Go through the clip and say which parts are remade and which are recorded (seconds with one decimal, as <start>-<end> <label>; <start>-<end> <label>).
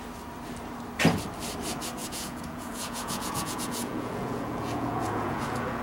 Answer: 0.0-2.0 recorded; 2.0-5.8 remade